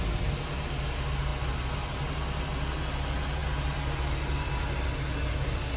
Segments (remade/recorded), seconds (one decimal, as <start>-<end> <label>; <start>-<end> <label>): 0.0-5.8 recorded